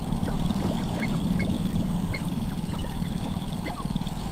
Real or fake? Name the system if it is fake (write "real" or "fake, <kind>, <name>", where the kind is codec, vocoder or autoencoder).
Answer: fake, codec, DAC